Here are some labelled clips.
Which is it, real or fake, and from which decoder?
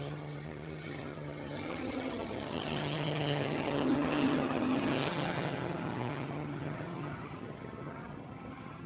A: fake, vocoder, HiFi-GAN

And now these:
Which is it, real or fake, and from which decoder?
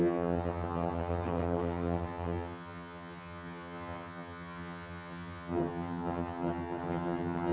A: fake, vocoder, HiFi-GAN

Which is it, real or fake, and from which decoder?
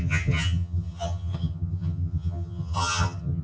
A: fake, vocoder, HiFi-GAN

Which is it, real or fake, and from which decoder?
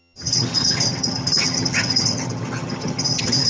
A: fake, vocoder, HiFi-GAN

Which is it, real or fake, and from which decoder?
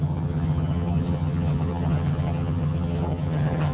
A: fake, vocoder, HiFi-GAN